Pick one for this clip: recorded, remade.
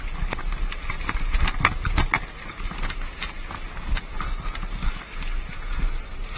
recorded